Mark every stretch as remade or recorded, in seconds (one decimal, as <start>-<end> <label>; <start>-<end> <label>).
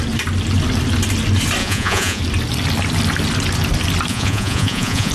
0.0-1.6 recorded; 1.6-2.2 remade; 2.2-4.1 recorded; 4.1-5.1 remade